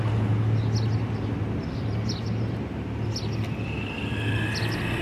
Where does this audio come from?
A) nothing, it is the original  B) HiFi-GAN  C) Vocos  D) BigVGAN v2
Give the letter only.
A